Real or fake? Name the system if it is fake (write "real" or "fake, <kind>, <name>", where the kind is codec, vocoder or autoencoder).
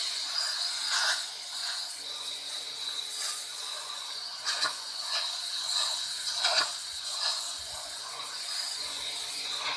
fake, vocoder, Vocos